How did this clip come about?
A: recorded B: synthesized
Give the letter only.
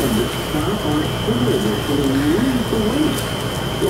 A